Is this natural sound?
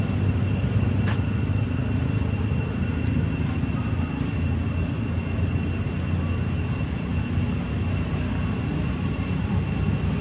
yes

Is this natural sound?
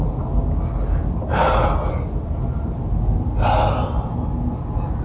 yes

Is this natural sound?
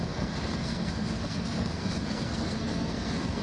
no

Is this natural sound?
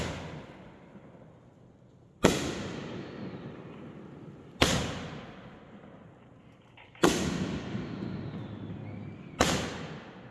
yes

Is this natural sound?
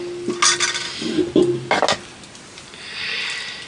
yes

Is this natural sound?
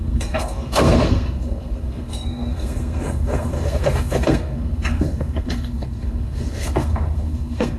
no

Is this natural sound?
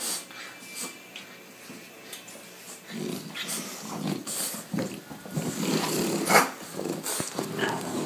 yes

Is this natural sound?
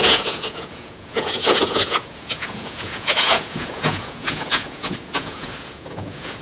no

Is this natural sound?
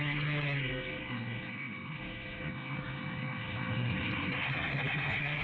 no